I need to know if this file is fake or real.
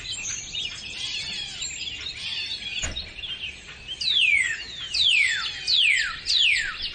real